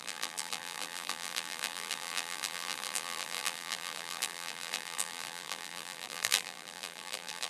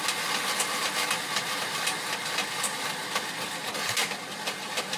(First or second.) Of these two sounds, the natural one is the second